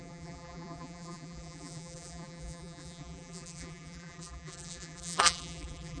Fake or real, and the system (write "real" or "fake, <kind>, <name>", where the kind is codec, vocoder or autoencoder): fake, vocoder, BigVGAN v2